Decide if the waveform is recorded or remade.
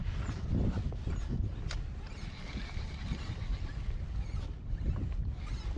recorded